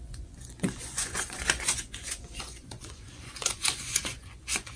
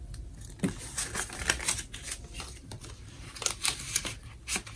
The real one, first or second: second